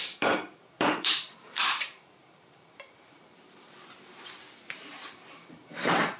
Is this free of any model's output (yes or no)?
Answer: no